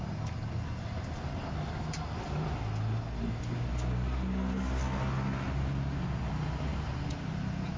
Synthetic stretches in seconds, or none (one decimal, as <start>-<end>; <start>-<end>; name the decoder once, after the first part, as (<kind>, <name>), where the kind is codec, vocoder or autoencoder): none